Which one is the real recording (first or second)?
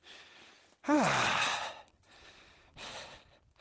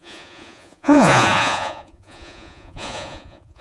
first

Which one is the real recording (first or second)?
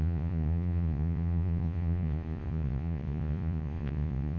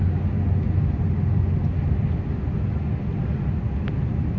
second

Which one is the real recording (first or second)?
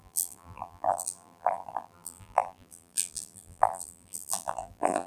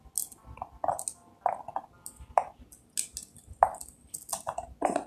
second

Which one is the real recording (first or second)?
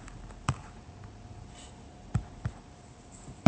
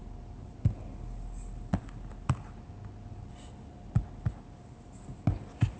second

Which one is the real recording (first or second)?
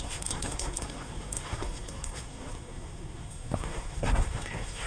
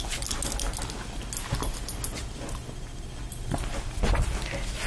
second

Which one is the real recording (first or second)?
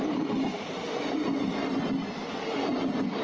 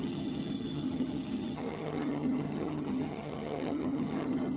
first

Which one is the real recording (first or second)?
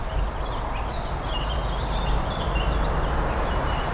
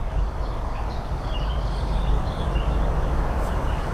first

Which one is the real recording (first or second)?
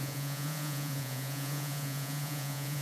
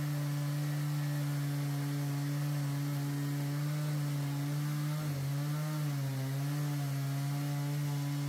second